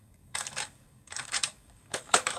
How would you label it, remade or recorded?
remade